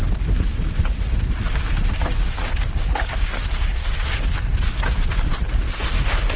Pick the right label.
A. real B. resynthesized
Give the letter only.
A